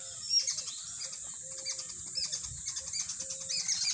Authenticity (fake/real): real